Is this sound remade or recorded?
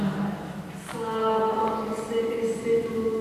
recorded